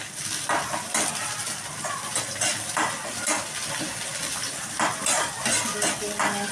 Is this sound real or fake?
real